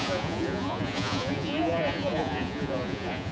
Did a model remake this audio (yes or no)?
yes